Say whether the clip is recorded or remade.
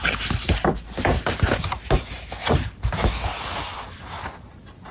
recorded